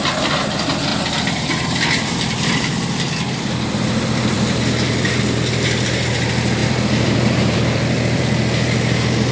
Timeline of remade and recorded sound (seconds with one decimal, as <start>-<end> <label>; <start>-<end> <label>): 0.0-0.9 recorded; 0.9-4.6 remade; 4.6-6.6 recorded; 6.6-8.2 remade; 8.2-9.3 recorded

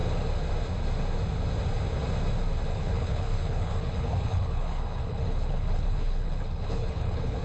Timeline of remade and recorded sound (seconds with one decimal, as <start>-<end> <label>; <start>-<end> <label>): 0.0-2.7 recorded; 2.7-7.4 remade

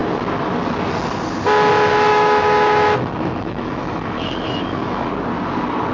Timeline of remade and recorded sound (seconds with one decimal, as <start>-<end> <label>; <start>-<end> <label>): 0.0-2.1 recorded; 2.1-5.1 remade; 5.1-5.9 recorded

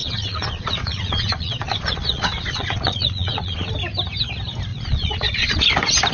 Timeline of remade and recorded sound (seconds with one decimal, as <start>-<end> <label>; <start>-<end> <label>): 0.0-3.7 remade; 3.7-4.7 recorded; 4.7-5.6 remade; 5.6-6.1 recorded

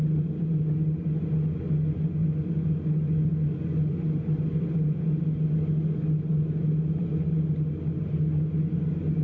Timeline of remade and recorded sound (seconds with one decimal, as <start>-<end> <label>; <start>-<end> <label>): 0.0-9.2 recorded